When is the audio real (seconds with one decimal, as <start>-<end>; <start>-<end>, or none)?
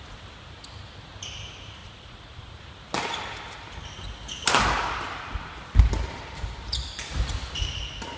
0.0-1.8; 2.6-8.2